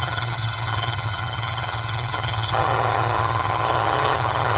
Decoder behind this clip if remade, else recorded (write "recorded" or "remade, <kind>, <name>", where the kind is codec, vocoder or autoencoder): remade, vocoder, HiFi-GAN